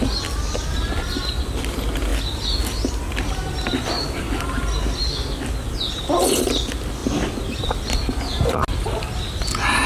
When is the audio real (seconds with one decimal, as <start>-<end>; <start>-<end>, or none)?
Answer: 0.0-9.9